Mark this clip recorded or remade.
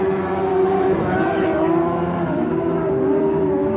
remade